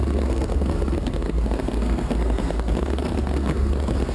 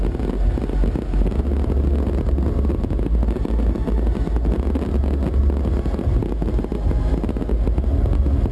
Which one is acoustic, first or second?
second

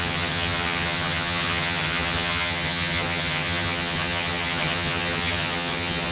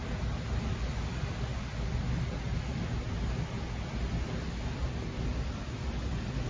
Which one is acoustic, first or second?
second